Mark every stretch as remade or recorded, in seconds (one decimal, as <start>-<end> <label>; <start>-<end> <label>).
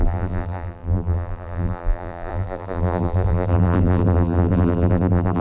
0.0-5.4 remade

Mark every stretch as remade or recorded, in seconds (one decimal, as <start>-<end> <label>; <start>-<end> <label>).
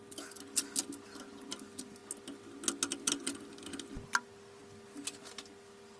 0.0-6.0 recorded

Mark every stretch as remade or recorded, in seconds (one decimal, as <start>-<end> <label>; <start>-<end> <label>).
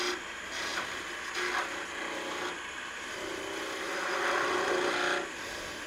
0.0-5.9 recorded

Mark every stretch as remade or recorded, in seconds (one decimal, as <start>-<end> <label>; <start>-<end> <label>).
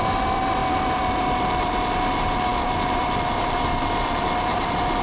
0.0-0.6 remade; 0.6-1.6 recorded; 1.6-5.0 remade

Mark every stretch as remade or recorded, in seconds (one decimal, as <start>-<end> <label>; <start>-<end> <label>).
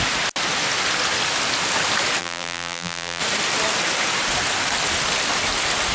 0.0-2.2 recorded; 2.2-3.2 remade; 3.2-5.9 recorded